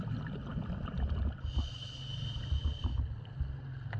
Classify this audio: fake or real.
real